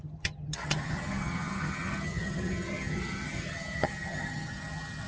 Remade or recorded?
remade